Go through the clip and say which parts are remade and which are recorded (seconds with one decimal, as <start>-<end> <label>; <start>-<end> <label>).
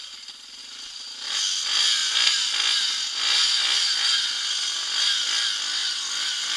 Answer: 0.0-6.6 recorded